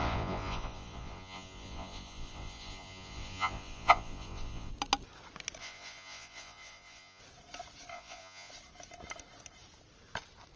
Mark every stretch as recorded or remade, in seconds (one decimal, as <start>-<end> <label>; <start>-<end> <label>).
0.0-4.7 remade; 4.7-5.6 recorded; 5.6-7.2 remade; 7.2-7.9 recorded; 7.9-8.5 remade; 8.5-10.6 recorded